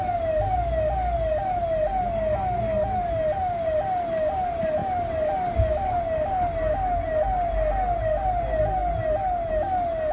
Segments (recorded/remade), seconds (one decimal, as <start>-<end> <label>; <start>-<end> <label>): 0.0-10.1 recorded